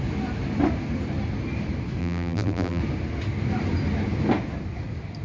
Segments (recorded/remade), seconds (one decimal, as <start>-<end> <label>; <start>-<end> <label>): 0.0-2.0 recorded; 2.0-2.8 remade; 2.8-5.2 recorded